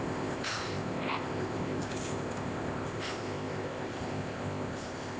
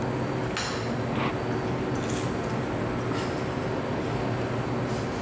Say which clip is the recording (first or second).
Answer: second